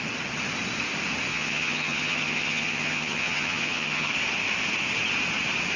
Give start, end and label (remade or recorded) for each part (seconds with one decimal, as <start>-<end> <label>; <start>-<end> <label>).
0.0-1.3 recorded; 1.3-4.1 remade; 4.1-5.8 recorded